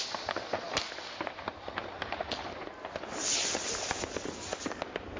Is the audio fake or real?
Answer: real